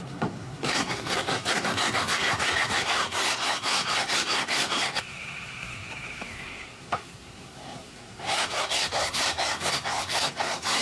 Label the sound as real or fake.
fake